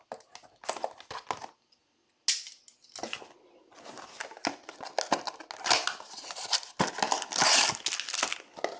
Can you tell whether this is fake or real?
real